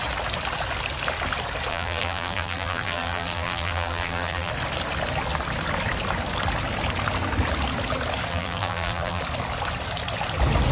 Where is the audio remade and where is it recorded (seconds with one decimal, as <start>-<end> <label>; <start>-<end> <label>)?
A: 0.0-1.7 recorded; 1.7-4.5 remade; 4.5-8.3 recorded; 8.3-9.2 remade; 9.2-10.7 recorded